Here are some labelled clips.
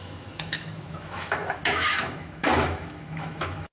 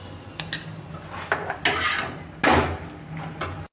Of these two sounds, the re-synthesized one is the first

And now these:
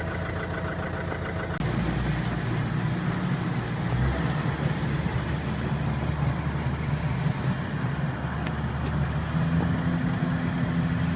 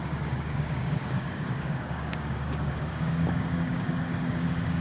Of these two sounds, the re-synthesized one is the second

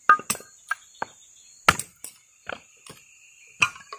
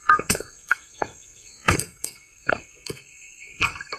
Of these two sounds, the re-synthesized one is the second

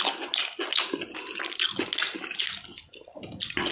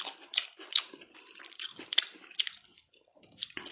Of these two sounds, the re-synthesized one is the second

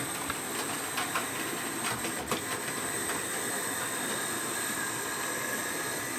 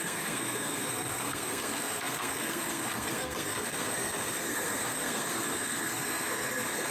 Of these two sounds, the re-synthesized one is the second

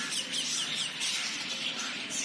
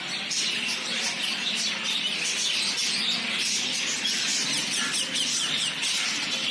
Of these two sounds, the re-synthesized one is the first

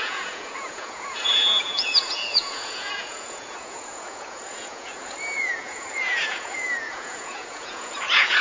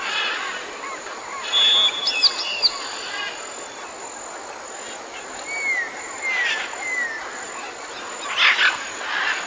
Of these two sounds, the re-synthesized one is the first